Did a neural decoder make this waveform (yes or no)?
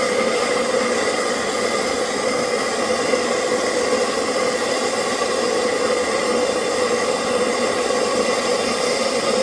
no